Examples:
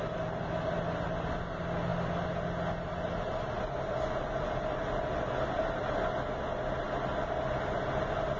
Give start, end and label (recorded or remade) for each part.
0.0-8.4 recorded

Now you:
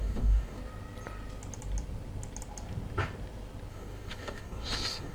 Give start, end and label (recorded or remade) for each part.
0.0-0.6 remade; 0.6-3.7 recorded; 3.7-5.1 remade

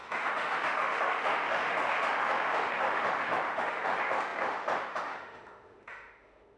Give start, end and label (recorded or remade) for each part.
0.0-6.6 remade